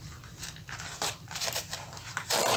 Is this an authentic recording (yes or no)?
no